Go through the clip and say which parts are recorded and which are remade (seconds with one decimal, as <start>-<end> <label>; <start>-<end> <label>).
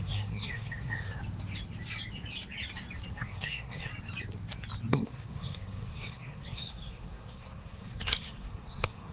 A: 0.0-1.2 remade; 1.2-3.1 recorded; 3.1-3.9 remade; 3.9-4.9 recorded; 4.9-9.1 remade